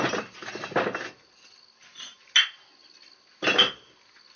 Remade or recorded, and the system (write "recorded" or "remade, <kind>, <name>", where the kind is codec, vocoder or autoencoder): recorded